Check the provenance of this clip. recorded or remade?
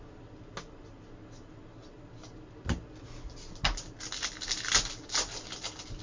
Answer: recorded